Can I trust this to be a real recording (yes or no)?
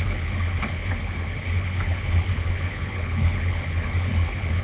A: no